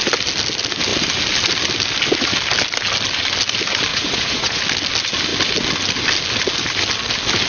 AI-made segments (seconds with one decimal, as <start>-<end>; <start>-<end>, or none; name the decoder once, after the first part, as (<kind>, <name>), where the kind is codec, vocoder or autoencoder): 3.9-4.6 (vocoder, Vocos)